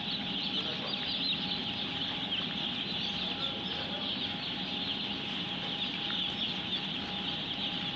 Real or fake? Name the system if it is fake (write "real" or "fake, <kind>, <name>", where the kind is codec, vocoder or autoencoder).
real